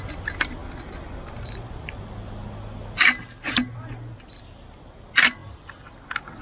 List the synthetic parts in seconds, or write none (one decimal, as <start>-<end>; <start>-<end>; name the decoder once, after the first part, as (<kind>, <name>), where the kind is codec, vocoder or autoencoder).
none